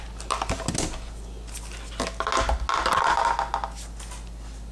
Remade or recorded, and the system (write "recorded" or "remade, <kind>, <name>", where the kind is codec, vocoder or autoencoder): recorded